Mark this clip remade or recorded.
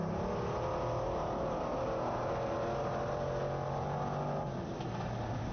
recorded